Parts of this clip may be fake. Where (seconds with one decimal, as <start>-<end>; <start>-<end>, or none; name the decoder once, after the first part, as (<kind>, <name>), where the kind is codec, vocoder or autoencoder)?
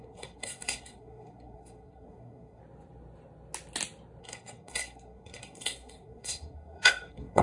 0.0-2.6 (codec, SNAC); 4.2-7.4